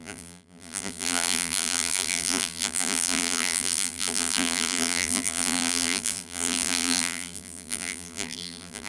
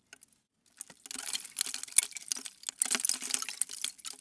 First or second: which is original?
second